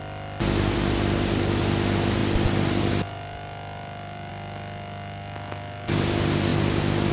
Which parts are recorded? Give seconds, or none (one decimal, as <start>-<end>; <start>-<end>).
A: 0.0-2.2; 4.3-7.1